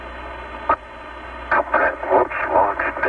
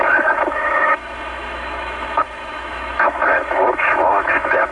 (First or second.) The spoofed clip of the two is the second